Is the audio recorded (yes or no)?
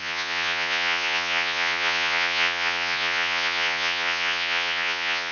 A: no